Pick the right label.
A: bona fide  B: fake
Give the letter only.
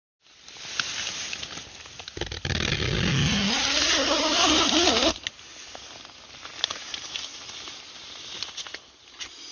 A